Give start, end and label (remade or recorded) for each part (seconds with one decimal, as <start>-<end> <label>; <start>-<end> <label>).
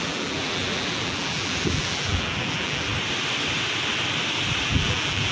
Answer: 0.0-2.9 remade; 2.9-4.6 recorded; 4.6-5.3 remade